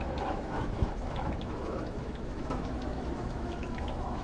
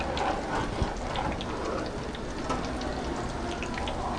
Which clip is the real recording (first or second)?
second